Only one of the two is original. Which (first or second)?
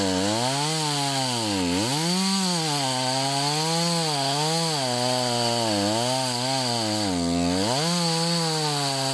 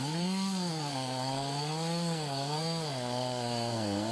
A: first